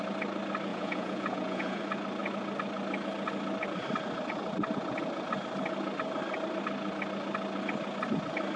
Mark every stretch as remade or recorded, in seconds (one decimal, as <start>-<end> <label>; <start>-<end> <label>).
0.0-0.7 recorded; 0.7-1.8 remade; 1.8-8.6 recorded